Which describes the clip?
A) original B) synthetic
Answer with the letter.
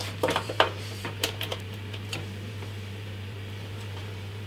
B